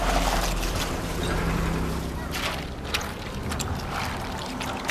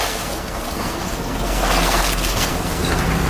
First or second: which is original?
first